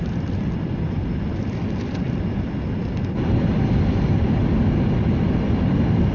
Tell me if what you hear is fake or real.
real